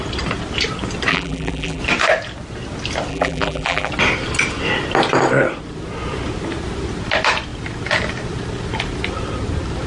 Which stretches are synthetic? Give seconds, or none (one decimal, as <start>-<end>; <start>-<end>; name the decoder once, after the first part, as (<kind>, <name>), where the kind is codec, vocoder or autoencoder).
1.1-1.8 (vocoder, BigVGAN v2); 3.1-3.9